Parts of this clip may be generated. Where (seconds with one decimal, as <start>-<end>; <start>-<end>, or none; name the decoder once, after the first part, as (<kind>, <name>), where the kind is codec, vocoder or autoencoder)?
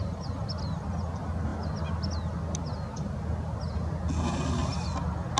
none